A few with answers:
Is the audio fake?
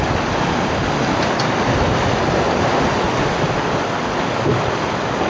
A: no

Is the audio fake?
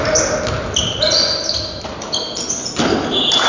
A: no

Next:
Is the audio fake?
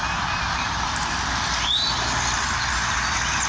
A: no